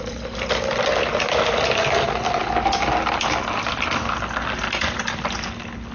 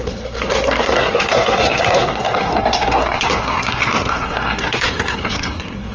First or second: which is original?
first